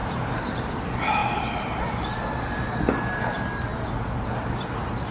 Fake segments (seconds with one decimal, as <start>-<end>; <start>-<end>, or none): 0.0-0.7